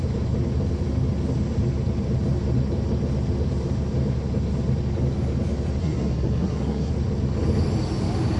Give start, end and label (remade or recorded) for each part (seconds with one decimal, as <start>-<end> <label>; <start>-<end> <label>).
0.0-5.8 recorded; 5.8-6.9 remade; 6.9-8.4 recorded